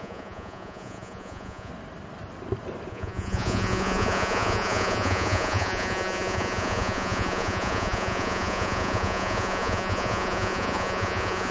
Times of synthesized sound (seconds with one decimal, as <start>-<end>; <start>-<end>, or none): 0.0-1.7; 2.9-11.5